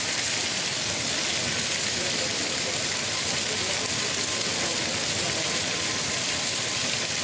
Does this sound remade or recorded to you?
recorded